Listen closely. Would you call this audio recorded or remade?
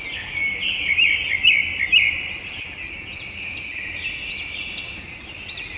recorded